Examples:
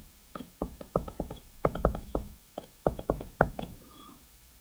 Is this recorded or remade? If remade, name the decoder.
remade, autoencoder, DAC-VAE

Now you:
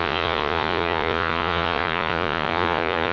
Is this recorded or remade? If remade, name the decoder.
remade, vocoder, Vocos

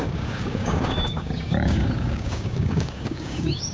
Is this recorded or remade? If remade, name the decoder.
remade, codec, DAC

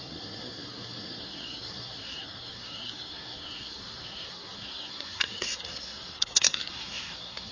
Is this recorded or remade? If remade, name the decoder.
remade, codec, SNAC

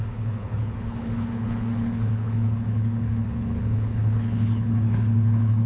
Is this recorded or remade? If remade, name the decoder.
remade, codec, HILCodec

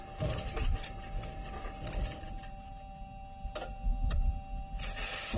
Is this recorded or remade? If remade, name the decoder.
recorded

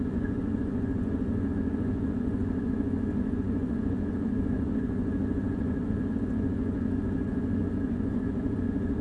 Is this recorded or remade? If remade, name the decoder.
remade, vocoder, Vocos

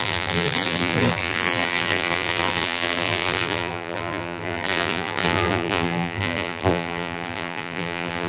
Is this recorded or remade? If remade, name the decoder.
remade, vocoder, BigVGAN v2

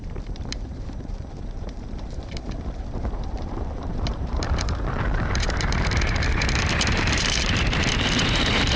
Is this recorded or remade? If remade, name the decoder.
remade, vocoder, BigVGAN v2